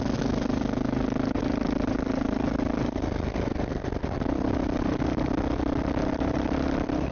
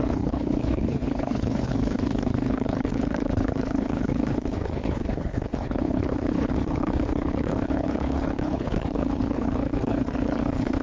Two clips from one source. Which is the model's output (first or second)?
second